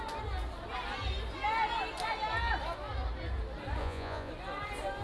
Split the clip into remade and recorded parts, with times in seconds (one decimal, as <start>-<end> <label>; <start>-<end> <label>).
0.0-3.8 recorded; 3.8-4.3 remade; 4.3-5.0 recorded